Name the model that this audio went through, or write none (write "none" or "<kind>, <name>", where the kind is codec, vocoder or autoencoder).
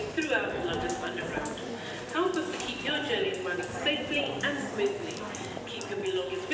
none